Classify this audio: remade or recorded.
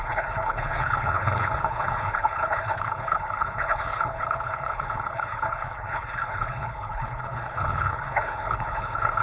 remade